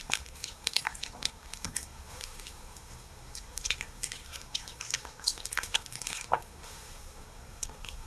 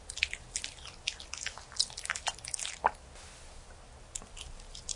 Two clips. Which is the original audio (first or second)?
second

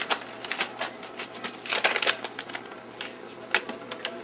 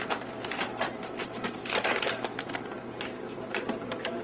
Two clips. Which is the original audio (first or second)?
first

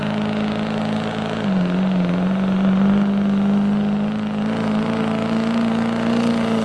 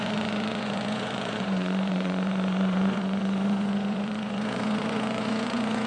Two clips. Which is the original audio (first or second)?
first